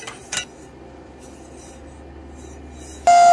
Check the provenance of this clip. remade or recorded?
recorded